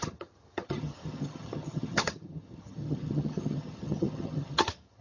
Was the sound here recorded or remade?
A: remade